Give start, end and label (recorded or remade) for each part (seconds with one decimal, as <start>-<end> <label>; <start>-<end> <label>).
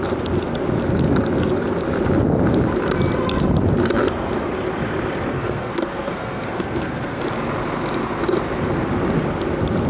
0.0-5.3 recorded; 5.3-7.2 remade; 7.2-9.9 recorded